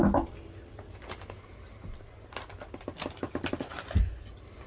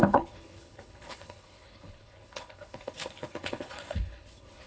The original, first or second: first